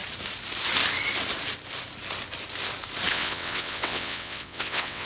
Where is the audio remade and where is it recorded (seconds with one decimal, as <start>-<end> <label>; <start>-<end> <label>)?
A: 0.0-3.1 recorded; 3.1-5.1 remade